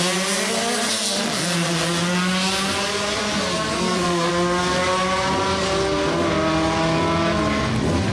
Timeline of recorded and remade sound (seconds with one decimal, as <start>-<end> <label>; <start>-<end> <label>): 0.0-3.7 recorded; 3.7-4.3 remade; 4.3-8.1 recorded